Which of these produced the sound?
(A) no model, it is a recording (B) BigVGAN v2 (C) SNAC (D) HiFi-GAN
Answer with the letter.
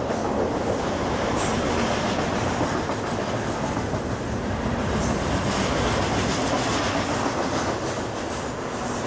A